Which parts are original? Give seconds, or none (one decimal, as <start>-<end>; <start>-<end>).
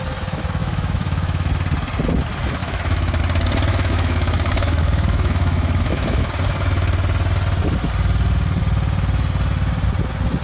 0.0-0.6; 1.5-2.6; 3.2-3.7; 6.3-10.4